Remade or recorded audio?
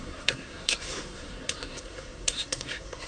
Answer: remade